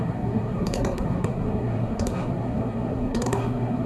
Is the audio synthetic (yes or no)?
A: yes